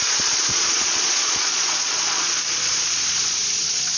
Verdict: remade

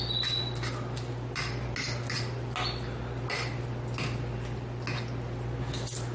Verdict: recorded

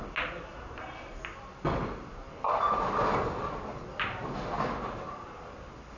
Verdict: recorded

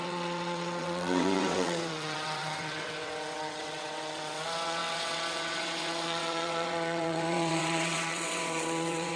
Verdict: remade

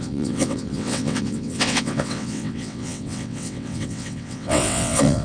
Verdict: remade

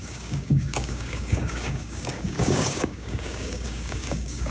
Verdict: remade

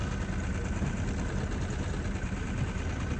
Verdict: recorded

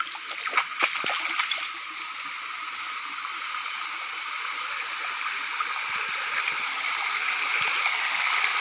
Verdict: recorded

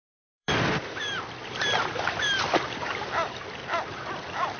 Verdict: remade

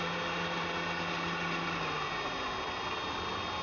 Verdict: recorded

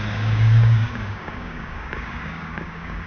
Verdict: remade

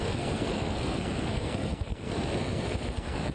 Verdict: remade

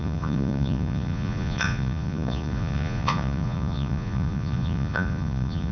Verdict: remade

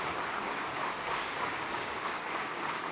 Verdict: remade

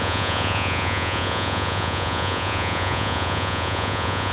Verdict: remade